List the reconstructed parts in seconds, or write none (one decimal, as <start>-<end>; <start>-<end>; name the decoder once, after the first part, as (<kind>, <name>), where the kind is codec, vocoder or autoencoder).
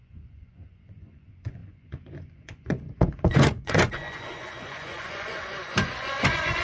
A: 0.0-6.6 (vocoder, Vocos)